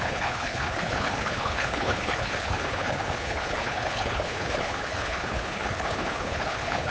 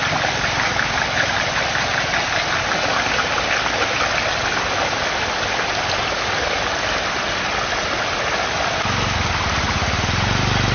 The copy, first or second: first